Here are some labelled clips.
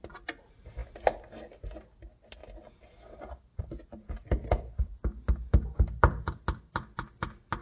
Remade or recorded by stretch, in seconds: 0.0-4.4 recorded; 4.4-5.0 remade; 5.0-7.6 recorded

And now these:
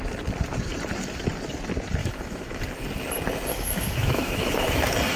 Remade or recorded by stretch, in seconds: 0.0-2.0 recorded; 2.0-2.6 remade; 2.6-3.5 recorded; 3.5-4.8 remade; 4.8-5.2 recorded

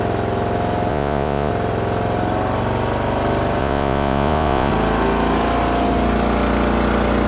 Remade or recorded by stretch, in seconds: 0.0-0.9 recorded; 0.9-1.5 remade; 1.5-3.6 recorded; 3.6-4.7 remade; 4.7-7.3 recorded

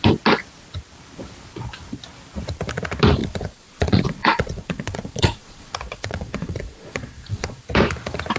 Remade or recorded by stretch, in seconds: 0.0-3.2 recorded; 3.2-7.6 remade; 7.6-8.4 recorded

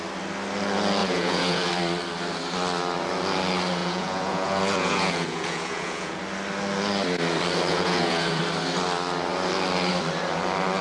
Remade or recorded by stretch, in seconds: 0.0-1.0 recorded; 1.0-1.7 remade; 1.7-3.8 recorded; 3.8-6.2 remade; 6.2-7.7 recorded; 7.7-8.4 remade; 8.4-10.8 recorded

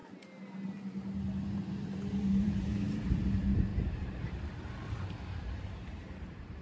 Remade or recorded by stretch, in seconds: 0.0-2.3 recorded; 2.3-6.6 remade